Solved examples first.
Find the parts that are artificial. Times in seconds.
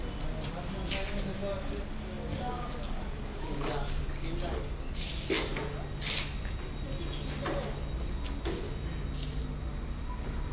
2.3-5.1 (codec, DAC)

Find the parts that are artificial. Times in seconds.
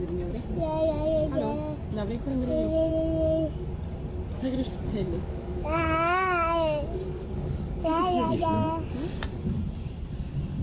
2.3-2.9 (codec, DAC); 4.4-8.4